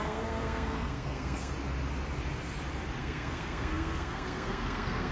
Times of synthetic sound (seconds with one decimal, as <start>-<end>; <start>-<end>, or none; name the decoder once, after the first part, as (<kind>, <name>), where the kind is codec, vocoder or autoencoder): 0.0-1.5 (codec, SNAC); 3.0-5.1